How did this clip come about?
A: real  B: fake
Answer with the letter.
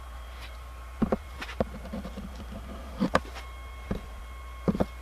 A